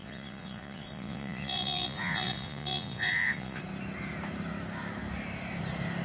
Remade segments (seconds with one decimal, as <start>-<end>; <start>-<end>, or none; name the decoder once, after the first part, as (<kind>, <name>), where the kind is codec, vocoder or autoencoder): 0.0-3.6 (vocoder, Vocos)